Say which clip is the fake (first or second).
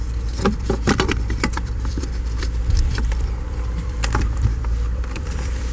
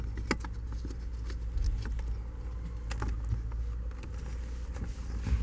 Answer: first